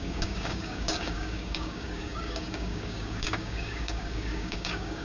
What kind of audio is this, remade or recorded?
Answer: remade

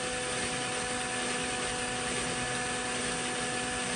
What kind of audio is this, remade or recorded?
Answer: recorded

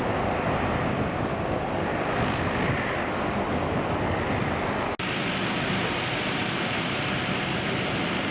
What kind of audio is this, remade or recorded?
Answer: recorded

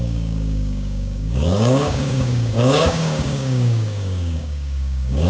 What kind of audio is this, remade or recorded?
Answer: remade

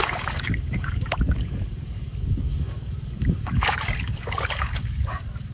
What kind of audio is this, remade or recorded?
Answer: remade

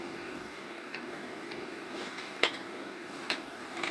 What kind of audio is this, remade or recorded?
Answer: remade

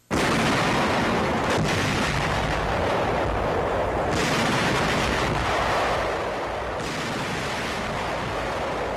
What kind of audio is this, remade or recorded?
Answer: recorded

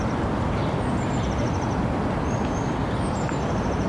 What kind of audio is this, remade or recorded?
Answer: recorded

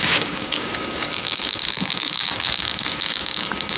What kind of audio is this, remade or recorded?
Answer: remade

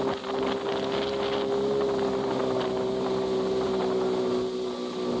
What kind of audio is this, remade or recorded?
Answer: recorded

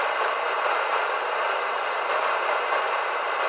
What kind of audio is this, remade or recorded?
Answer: recorded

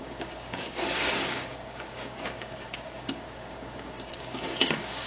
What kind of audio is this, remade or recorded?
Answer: remade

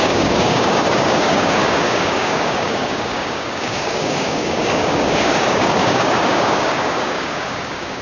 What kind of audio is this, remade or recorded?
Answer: remade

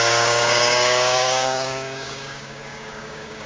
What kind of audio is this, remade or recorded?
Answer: remade